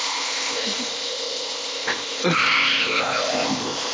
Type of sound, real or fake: fake